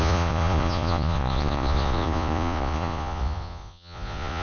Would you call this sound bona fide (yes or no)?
no